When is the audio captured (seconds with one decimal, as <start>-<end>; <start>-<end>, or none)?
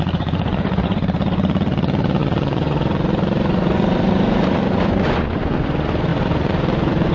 none